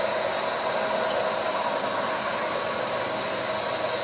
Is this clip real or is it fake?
real